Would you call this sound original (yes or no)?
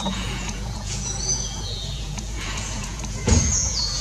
no